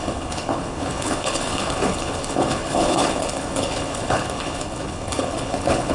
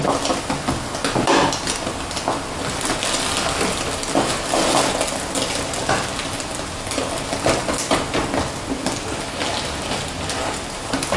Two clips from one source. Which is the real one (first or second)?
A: second